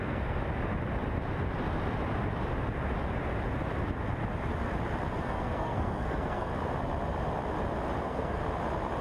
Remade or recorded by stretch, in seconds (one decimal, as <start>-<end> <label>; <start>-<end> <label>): 0.0-0.4 remade; 0.4-5.2 recorded; 5.2-6.5 remade; 6.5-8.0 recorded; 8.0-8.4 remade; 8.4-9.0 recorded